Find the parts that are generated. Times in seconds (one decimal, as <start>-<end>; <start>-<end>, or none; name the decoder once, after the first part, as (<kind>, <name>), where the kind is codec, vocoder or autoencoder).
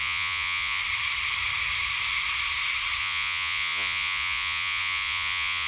0.0-0.8 (vocoder, Vocos); 3.0-5.7